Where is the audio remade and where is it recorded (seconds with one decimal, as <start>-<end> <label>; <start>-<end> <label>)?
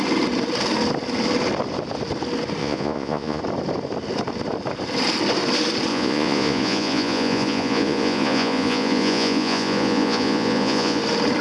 0.0-2.6 recorded; 2.6-3.4 remade; 3.4-5.9 recorded; 5.9-11.0 remade; 11.0-11.4 recorded